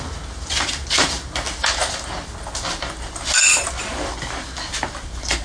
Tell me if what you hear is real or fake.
real